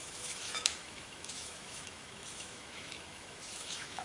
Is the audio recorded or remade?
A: remade